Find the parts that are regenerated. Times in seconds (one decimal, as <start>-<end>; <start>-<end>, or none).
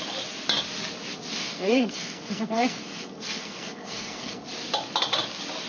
1.4-4.4